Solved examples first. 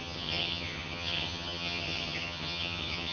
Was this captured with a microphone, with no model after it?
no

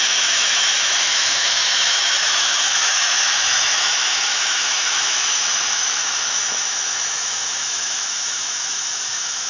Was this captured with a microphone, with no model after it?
no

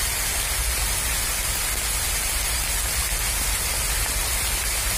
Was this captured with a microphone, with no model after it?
yes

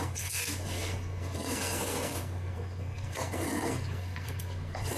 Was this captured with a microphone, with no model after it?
no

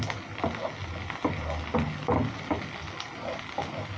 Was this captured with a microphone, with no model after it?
yes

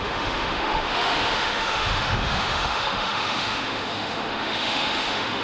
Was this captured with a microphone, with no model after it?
no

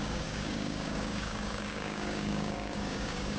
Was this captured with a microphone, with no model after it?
no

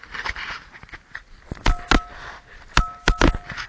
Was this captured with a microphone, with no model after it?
yes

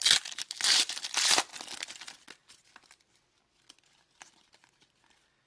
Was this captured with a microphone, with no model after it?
yes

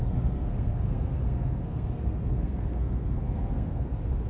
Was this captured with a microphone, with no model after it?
no